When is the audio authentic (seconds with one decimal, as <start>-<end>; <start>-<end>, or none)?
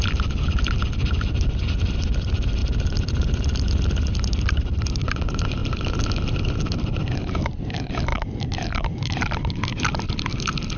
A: 0.0-10.8